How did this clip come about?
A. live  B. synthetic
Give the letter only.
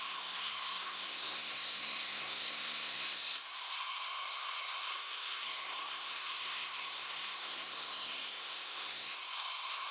B